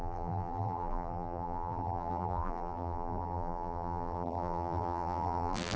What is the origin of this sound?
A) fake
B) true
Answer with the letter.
A